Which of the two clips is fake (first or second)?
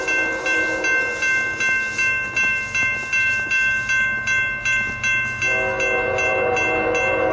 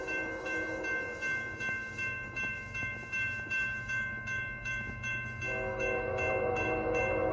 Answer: second